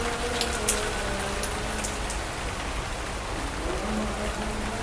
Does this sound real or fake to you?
real